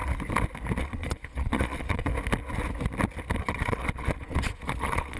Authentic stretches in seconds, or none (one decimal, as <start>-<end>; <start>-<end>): 0.0-0.8; 2.1-3.4